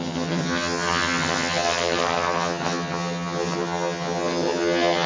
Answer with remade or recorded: remade